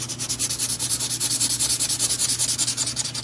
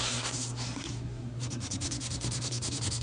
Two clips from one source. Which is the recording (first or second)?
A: first